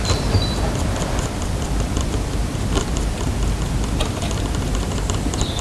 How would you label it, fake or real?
fake